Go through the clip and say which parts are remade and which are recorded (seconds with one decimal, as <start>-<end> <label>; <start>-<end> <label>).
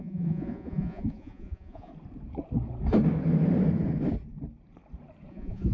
0.0-1.9 remade; 1.9-5.3 recorded; 5.3-5.7 remade